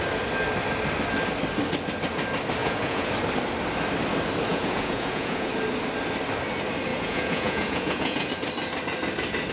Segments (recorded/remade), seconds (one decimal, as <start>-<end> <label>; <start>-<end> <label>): 0.0-2.6 recorded; 2.6-3.1 remade; 3.1-4.5 recorded; 4.5-5.5 remade; 5.5-6.9 recorded; 6.9-8.3 remade; 8.3-9.5 recorded